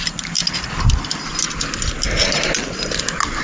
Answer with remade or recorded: recorded